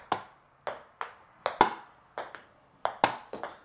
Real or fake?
real